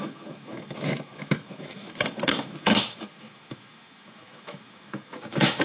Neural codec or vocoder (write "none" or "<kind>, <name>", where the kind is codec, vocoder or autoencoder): autoencoder, DAC-VAE